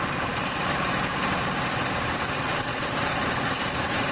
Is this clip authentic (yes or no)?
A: no